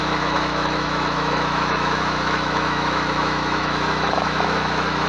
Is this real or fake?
fake